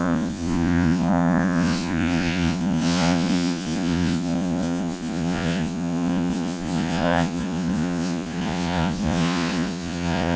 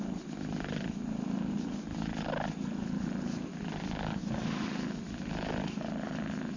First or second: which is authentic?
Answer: second